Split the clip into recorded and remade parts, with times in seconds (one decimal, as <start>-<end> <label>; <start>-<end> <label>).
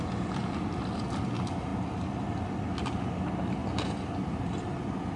0.0-5.2 recorded